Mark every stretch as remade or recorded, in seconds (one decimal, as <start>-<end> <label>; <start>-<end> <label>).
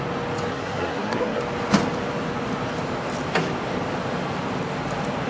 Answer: 0.0-0.5 recorded; 0.5-1.4 remade; 1.4-5.3 recorded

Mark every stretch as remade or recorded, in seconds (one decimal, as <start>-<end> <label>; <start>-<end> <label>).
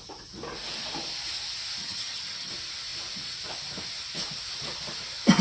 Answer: 0.0-1.8 recorded; 1.8-2.5 remade; 2.5-5.4 recorded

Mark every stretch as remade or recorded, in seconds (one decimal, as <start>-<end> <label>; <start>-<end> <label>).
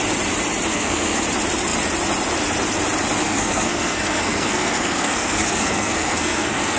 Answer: 0.0-0.7 recorded; 0.7-1.2 remade; 1.2-3.2 recorded; 3.2-6.8 remade